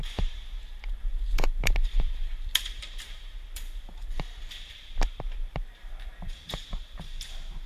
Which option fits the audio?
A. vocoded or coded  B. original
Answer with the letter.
A